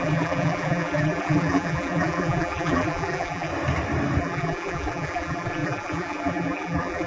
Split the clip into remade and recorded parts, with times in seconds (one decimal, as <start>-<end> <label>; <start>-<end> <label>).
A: 0.0-3.5 remade; 3.5-4.2 recorded; 4.2-7.1 remade